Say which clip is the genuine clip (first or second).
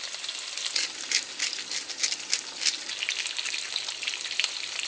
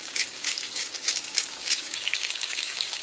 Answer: first